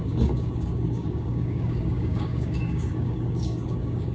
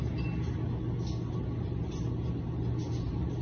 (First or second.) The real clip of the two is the second